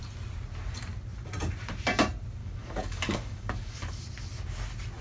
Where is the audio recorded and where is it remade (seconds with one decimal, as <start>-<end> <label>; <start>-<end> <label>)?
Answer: 0.0-2.4 recorded; 2.4-4.0 remade; 4.0-5.0 recorded